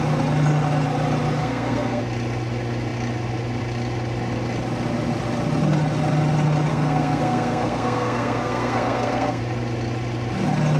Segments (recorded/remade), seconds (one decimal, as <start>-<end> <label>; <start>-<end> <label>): 0.0-1.4 recorded; 1.4-2.0 remade; 2.0-6.7 recorded; 6.7-9.4 remade; 9.4-10.8 recorded